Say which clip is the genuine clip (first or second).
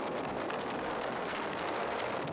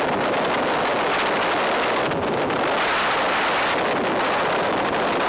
second